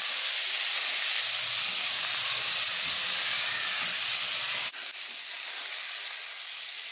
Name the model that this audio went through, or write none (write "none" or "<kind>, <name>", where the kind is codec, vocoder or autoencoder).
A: none